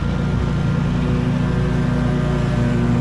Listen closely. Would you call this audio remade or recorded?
recorded